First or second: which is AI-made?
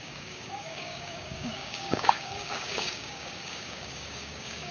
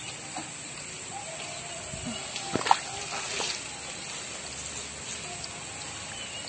first